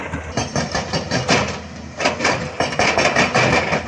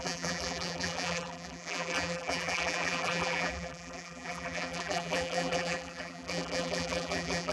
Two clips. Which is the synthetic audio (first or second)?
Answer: second